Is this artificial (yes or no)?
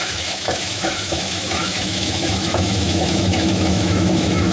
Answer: yes